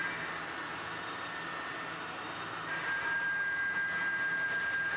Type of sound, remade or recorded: recorded